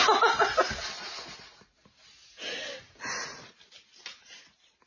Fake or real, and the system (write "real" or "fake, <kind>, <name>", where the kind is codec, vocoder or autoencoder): real